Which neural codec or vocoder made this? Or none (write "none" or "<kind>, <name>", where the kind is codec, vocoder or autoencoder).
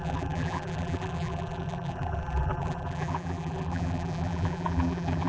vocoder, BigVGAN v2